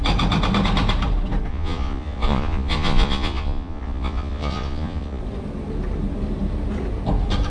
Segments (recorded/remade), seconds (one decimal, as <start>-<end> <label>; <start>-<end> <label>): 0.0-1.5 recorded; 1.5-5.2 remade; 5.2-7.5 recorded